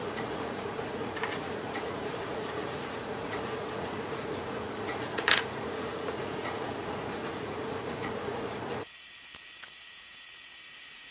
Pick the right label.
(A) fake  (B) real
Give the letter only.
A